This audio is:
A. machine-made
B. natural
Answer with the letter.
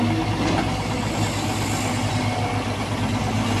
B